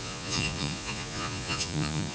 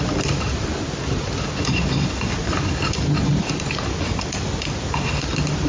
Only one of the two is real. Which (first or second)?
second